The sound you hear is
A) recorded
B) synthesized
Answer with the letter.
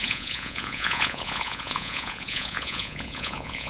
B